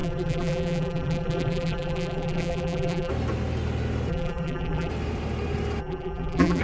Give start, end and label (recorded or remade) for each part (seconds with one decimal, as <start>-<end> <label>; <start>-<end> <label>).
0.0-3.1 remade; 3.1-4.1 recorded; 4.1-4.9 remade; 4.9-5.8 recorded; 5.8-6.6 remade